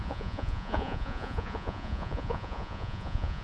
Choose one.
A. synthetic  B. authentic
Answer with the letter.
A